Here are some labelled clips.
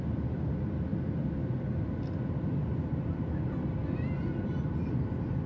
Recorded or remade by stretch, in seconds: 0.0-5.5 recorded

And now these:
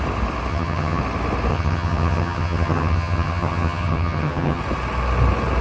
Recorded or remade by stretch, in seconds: 0.0-0.5 recorded; 0.5-1.0 remade; 1.0-1.5 recorded; 1.5-4.6 remade; 4.6-5.6 recorded